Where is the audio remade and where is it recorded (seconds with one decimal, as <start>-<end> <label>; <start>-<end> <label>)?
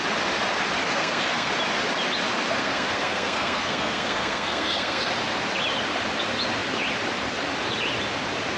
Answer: 0.0-0.8 recorded; 0.8-1.5 remade; 1.5-2.6 recorded; 2.6-5.1 remade; 5.1-8.6 recorded